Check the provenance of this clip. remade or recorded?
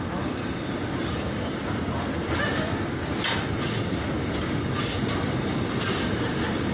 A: recorded